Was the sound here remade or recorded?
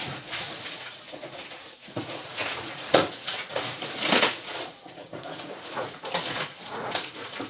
remade